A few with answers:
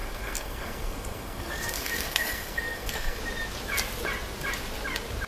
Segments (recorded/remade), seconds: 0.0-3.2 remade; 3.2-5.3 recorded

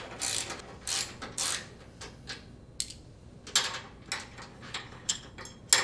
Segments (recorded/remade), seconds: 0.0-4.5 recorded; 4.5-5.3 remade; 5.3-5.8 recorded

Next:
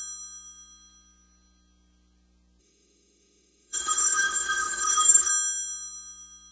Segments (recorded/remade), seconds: 0.0-2.6 recorded; 2.6-5.3 remade; 5.3-6.5 recorded